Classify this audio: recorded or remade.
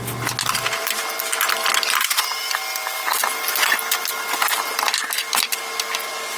recorded